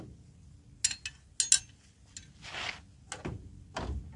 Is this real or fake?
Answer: real